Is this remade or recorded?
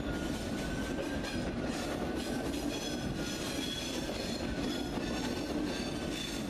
recorded